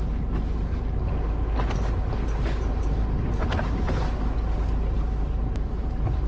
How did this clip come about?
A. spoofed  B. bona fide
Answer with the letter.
B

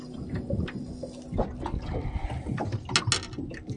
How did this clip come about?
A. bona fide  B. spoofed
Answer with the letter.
A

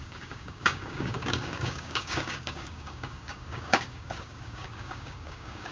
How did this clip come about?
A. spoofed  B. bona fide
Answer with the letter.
A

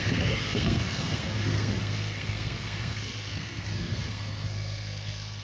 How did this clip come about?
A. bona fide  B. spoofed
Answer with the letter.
B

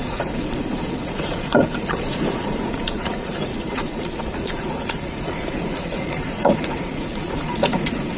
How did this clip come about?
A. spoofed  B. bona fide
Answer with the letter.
A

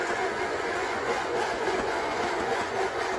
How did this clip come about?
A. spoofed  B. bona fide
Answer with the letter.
A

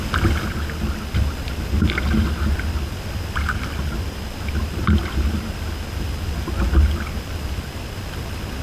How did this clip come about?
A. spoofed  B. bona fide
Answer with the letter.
B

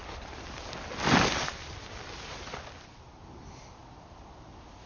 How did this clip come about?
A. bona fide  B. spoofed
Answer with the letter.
A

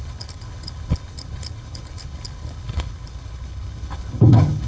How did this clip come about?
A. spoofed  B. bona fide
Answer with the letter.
A